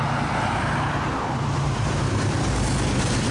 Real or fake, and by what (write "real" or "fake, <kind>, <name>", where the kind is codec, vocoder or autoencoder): fake, vocoder, BigVGAN v2